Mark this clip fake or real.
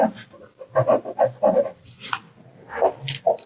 real